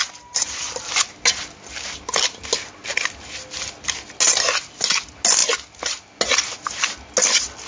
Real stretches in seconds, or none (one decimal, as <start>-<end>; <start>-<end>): 0.0-7.7